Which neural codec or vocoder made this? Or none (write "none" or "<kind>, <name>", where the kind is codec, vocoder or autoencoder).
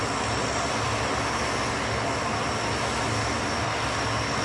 none